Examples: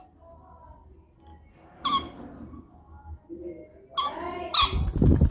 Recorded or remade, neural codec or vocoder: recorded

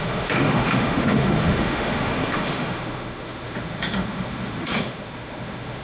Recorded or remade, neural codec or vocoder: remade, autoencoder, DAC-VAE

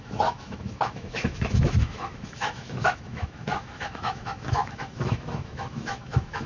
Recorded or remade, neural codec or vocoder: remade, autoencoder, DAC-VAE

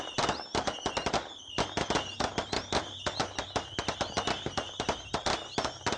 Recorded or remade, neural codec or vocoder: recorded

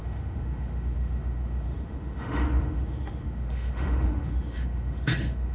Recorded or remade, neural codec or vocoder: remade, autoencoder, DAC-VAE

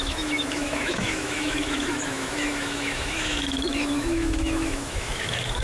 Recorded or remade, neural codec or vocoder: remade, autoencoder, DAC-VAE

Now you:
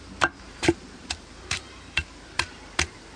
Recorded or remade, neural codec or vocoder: recorded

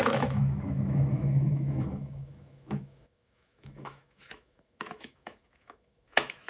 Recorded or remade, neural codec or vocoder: remade, autoencoder, DAC-VAE